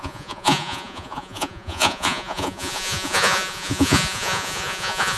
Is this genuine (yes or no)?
no